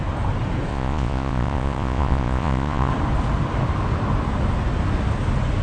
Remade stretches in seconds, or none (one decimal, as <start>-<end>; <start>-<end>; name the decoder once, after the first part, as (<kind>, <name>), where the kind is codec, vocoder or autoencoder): 0.7-2.9 (vocoder, Vocos)